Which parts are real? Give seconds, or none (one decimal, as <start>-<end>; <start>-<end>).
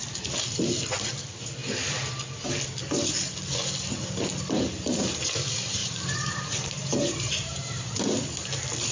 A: 0.0-5.8; 8.5-8.9